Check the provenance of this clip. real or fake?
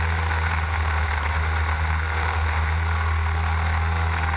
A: real